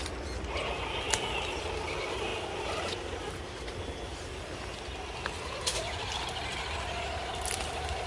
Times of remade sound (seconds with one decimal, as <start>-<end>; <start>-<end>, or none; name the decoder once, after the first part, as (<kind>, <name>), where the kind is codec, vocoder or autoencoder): none